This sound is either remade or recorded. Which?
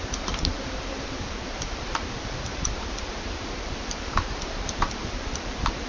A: remade